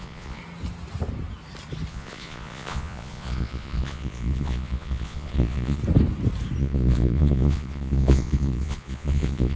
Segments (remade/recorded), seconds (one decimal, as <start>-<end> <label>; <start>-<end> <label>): 0.0-0.4 remade; 0.4-1.9 recorded; 1.9-5.8 remade; 5.8-6.6 recorded; 6.6-9.6 remade